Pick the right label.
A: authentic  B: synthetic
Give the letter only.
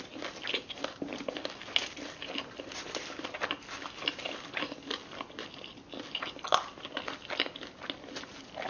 A